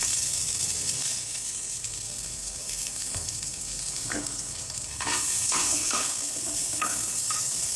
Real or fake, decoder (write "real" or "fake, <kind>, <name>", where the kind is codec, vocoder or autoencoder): fake, codec, SNAC